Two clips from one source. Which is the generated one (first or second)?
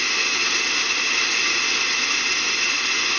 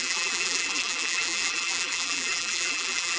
second